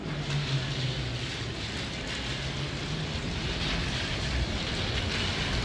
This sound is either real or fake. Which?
real